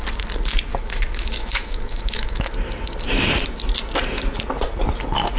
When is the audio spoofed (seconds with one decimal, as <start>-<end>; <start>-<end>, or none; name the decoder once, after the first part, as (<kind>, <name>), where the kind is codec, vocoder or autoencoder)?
0.7-2.5 (autoencoder, DAC-VAE)